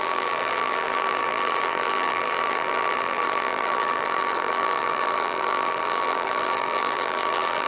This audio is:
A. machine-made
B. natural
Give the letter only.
A